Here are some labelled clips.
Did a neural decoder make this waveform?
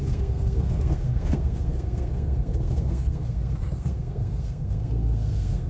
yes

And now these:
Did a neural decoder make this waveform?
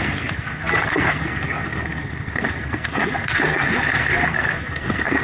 yes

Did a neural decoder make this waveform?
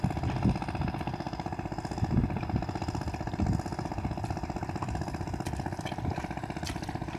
no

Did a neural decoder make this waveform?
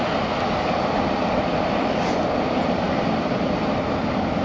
no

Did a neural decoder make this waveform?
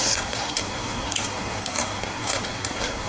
yes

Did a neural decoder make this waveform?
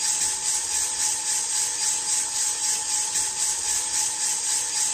no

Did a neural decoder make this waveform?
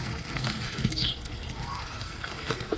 yes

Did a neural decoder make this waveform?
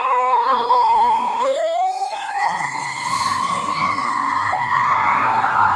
yes